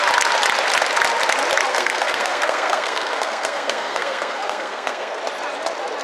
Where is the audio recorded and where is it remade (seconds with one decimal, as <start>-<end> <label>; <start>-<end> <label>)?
0.0-1.7 recorded; 1.7-5.2 remade; 5.2-6.0 recorded